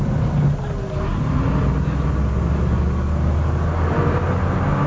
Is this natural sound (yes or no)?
yes